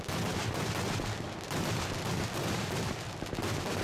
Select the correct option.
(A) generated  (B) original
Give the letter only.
B